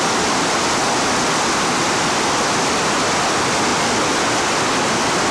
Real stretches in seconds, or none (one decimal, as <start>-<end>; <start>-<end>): 0.0-5.3